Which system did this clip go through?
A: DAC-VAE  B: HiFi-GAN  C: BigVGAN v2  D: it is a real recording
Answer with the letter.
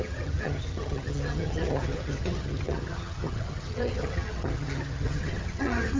B